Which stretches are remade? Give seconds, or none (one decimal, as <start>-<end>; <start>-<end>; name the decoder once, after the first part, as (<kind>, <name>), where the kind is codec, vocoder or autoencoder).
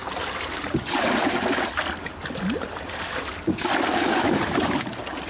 none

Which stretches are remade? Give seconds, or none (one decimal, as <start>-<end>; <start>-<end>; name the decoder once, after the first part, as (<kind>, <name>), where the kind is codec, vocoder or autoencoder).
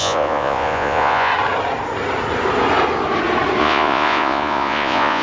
0.0-1.3 (vocoder, Vocos); 3.6-5.2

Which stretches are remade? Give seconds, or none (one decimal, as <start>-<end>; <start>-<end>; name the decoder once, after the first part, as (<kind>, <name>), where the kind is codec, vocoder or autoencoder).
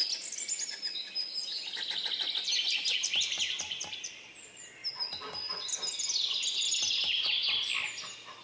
none